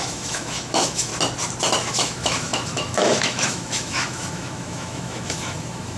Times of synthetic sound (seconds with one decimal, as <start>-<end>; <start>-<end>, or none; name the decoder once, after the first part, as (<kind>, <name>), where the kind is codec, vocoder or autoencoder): 0.0-1.1 (autoencoder, DAC-VAE); 1.9-6.0